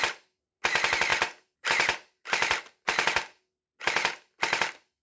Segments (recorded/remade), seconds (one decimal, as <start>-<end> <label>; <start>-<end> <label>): 0.0-5.0 recorded